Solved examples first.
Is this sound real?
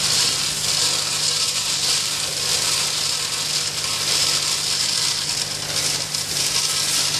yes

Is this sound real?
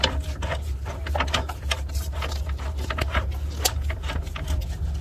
yes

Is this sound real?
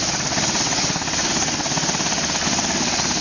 yes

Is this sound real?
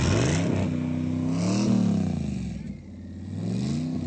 yes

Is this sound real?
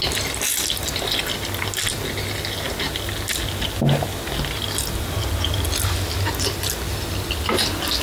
yes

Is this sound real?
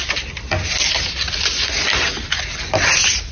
yes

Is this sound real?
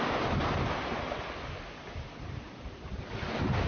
yes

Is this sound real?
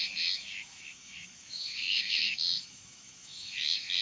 no